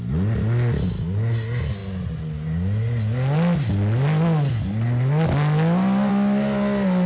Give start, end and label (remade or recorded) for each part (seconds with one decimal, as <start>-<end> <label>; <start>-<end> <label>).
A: 0.0-7.1 recorded